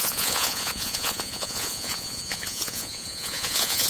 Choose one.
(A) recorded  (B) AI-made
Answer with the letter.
B